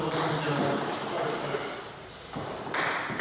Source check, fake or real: real